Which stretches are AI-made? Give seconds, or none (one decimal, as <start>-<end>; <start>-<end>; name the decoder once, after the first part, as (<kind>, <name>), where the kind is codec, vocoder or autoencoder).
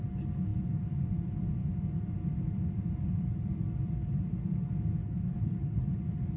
5.0-6.0 (codec, HILCodec)